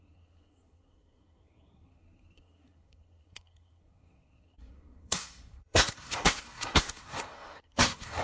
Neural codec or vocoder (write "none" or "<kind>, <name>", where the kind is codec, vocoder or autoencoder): codec, SNAC